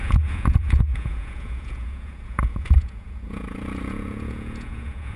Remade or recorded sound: remade